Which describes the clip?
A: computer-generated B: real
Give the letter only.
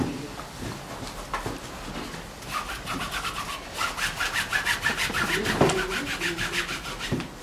B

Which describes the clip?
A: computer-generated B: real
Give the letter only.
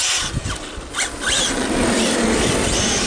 B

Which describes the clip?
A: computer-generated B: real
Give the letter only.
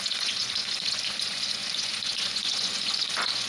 A